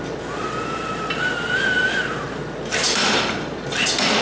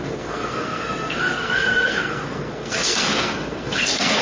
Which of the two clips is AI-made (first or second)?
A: second